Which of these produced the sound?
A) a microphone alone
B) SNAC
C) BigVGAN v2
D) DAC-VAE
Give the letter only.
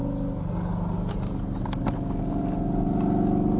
A